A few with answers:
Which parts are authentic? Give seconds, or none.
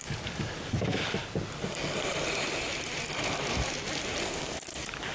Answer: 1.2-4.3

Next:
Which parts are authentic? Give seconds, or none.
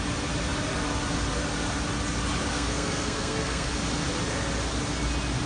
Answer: 0.0-2.5; 3.7-5.5